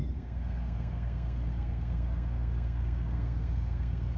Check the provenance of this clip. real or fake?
fake